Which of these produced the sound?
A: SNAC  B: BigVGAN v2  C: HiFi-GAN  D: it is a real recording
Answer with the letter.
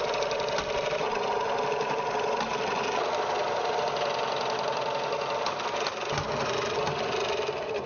D